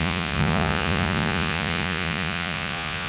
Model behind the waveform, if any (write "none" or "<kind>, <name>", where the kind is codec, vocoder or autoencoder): vocoder, Vocos